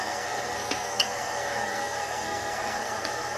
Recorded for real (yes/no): no